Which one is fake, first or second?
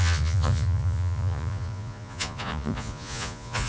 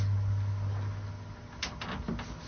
first